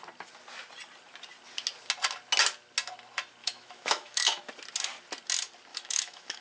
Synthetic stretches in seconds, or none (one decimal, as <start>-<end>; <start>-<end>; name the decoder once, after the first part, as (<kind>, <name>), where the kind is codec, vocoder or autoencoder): 3.4-4.4 (autoencoder, DAC-VAE); 5.7-6.4